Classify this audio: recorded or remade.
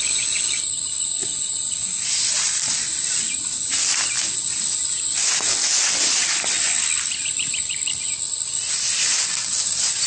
recorded